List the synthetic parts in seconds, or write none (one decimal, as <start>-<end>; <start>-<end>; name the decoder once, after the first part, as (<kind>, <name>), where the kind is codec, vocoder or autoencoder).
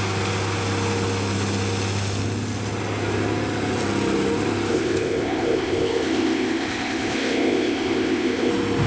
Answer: 4.7-8.5 (codec, ZipCodec)